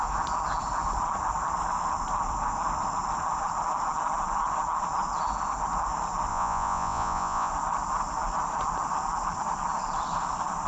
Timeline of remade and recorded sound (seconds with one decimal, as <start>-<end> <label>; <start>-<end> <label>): 0.0-6.3 recorded; 6.3-7.5 remade; 7.5-10.7 recorded